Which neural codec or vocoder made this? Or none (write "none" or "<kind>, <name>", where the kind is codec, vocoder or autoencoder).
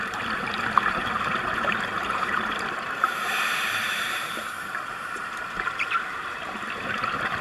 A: vocoder, BigVGAN v2